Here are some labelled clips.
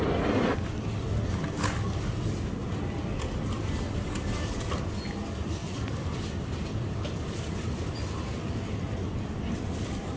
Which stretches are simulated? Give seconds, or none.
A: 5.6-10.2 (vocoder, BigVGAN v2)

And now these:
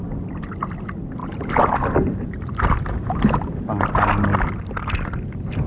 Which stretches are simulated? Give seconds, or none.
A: none